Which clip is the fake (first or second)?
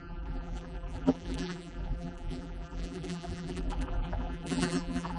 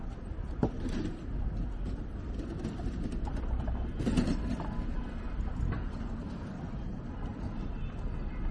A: first